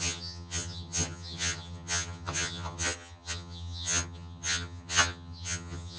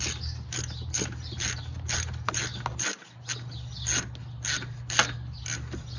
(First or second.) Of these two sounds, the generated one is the first